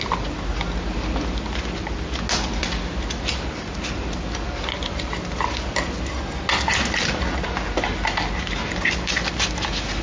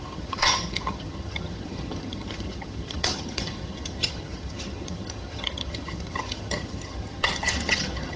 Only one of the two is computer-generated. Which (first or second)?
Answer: second